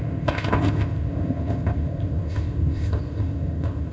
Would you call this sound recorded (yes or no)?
no